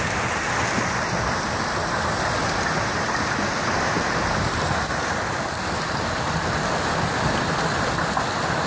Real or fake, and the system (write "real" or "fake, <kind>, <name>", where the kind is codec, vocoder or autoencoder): real